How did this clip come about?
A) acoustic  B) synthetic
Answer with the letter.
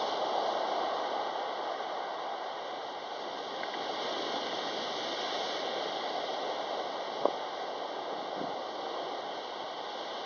A